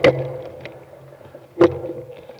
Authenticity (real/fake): real